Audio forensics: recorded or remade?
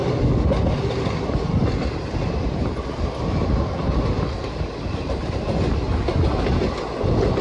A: recorded